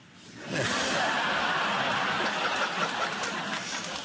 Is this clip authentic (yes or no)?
no